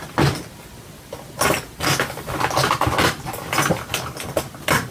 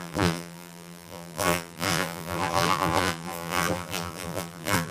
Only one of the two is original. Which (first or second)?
first